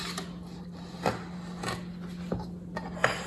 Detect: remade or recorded recorded